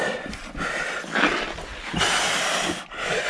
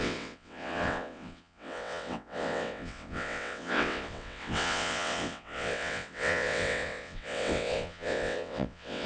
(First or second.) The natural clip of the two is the first